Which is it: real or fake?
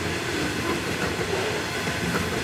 real